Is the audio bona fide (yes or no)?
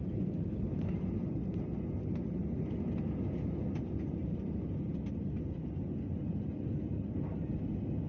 yes